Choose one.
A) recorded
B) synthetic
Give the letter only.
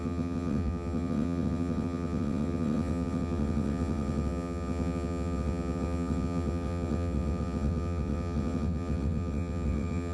B